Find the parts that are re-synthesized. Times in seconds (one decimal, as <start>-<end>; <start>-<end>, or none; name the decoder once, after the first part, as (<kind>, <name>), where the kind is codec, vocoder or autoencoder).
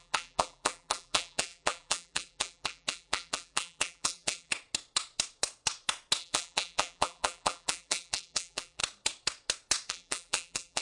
0.0-4.5 (vocoder, BigVGAN v2); 6.2-8.8; 9.9-10.8